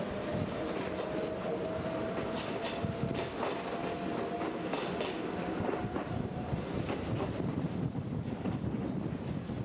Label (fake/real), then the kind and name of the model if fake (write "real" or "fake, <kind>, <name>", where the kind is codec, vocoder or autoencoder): real